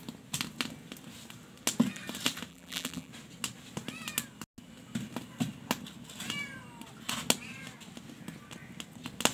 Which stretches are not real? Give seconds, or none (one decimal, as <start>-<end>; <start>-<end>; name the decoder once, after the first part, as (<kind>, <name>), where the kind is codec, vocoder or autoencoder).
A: 2.5-3.1 (vocoder, BigVGAN v2)